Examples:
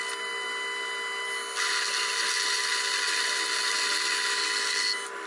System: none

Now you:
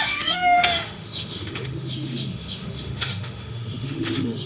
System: autoencoder, DAC-VAE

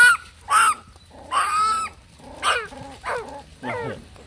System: none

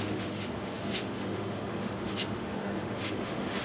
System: autoencoder, DAC-VAE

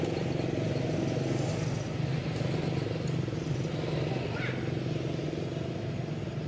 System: none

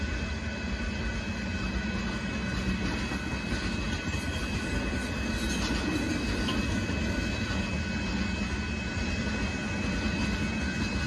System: none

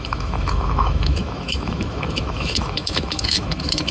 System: autoencoder, DAC-VAE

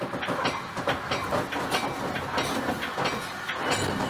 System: none